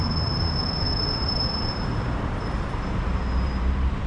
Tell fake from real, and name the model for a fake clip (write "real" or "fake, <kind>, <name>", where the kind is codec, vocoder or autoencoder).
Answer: fake, vocoder, BigVGAN v2